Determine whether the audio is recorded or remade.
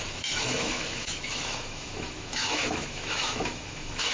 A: remade